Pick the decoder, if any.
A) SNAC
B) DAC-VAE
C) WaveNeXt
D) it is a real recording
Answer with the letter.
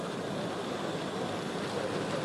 D